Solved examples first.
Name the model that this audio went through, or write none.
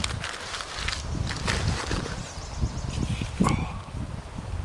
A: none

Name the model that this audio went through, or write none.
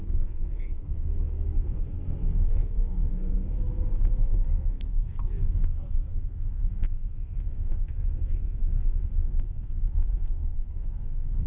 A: codec, SNAC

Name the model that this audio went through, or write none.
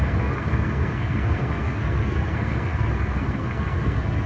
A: codec, SNAC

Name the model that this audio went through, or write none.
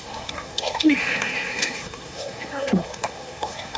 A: codec, SNAC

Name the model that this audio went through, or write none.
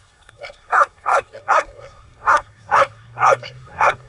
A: codec, SNAC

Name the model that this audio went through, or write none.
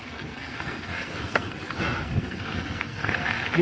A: codec, SNAC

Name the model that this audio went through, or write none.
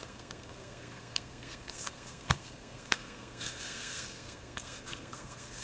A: codec, SNAC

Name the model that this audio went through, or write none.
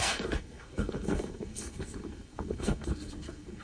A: codec, SNAC